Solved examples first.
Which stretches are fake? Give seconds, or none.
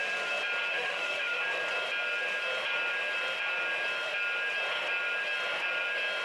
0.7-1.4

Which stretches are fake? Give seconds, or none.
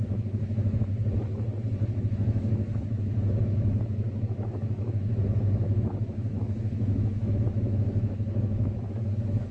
0.0-0.9; 2.0-9.5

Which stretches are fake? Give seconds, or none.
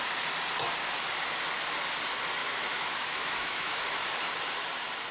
2.4-3.8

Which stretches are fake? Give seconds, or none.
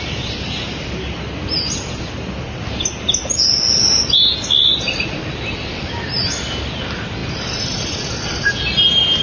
none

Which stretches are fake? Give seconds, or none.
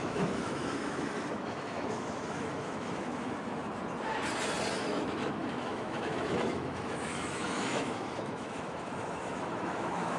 0.0-3.6; 4.7-10.2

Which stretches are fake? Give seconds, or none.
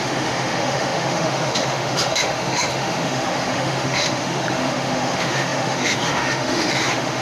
0.0-7.2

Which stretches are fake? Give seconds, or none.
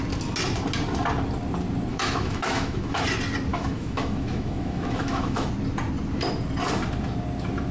1.9-3.0; 3.5-5.5